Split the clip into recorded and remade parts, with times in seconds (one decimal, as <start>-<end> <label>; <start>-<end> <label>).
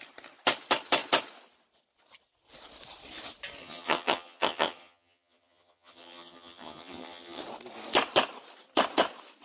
0.0-3.6 recorded; 3.6-7.4 remade; 7.4-9.4 recorded